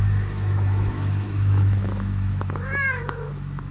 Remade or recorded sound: remade